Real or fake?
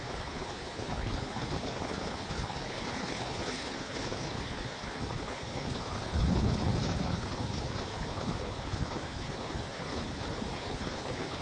fake